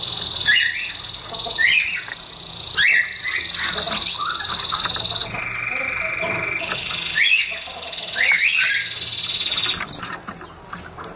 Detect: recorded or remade recorded